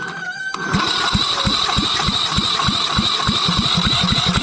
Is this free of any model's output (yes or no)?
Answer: yes